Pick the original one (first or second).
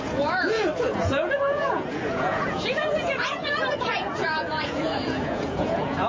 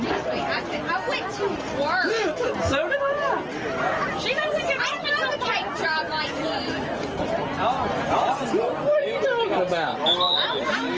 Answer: second